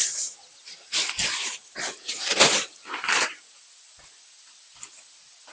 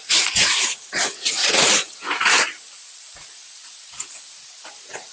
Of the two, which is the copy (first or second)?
second